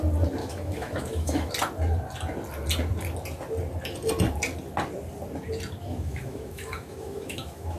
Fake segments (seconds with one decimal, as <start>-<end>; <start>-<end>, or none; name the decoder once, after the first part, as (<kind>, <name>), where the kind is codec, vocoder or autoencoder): 0.4-1.5 (autoencoder, DAC-VAE); 5.9-7.8